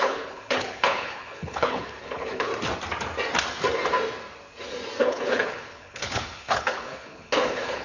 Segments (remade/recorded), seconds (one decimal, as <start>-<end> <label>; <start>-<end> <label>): 0.0-2.5 remade; 2.5-5.0 recorded; 5.0-7.8 remade

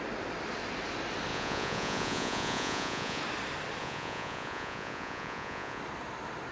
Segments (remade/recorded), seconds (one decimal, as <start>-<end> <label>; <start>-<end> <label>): 0.0-1.3 recorded; 1.3-3.2 remade; 3.2-3.8 recorded; 3.8-5.8 remade; 5.8-6.5 recorded

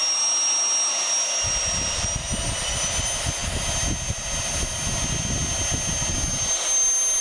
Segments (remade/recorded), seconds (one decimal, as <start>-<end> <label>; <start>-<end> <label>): 0.0-7.2 recorded

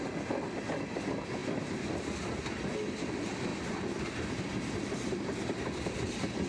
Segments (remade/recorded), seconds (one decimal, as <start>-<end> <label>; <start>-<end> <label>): 0.0-1.4 recorded; 1.4-2.0 remade; 2.0-3.5 recorded; 3.5-4.0 remade; 4.0-6.5 recorded

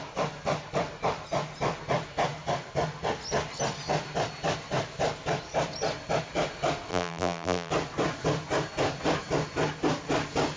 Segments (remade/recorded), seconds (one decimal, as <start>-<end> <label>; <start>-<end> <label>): 0.0-6.9 recorded; 6.9-7.7 remade; 7.7-10.6 recorded